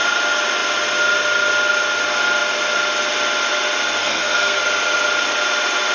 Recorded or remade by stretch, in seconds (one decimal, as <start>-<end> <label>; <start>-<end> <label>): 0.0-4.0 recorded; 4.0-4.6 remade; 4.6-5.9 recorded